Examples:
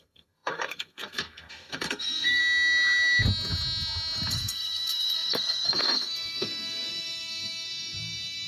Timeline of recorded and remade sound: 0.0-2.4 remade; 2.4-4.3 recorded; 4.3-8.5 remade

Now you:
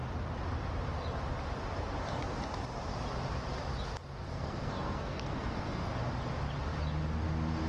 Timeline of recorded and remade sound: 0.0-4.3 recorded; 4.3-5.8 remade; 5.8-7.7 recorded

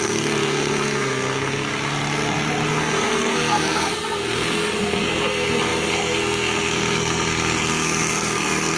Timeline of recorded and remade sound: 0.0-1.7 remade; 1.7-2.7 recorded; 2.7-8.8 remade

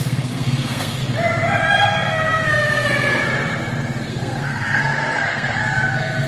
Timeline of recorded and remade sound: 0.0-1.0 remade; 1.0-1.6 recorded; 1.6-3.2 remade; 3.2-4.1 recorded; 4.1-6.3 remade

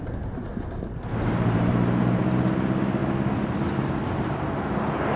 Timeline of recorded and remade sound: 0.0-5.2 recorded

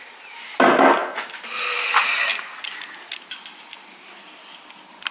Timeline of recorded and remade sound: 0.0-5.1 recorded

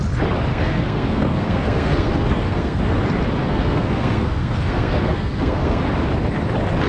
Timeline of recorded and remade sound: 0.0-0.5 recorded; 0.5-2.8 remade; 2.8-3.4 recorded; 3.4-5.8 remade; 5.8-6.9 recorded

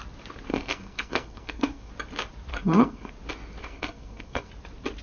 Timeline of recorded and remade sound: 0.0-0.5 recorded; 0.5-1.9 remade; 1.9-2.5 recorded; 2.5-3.1 remade; 3.1-3.6 recorded; 3.6-4.5 remade; 4.5-5.0 recorded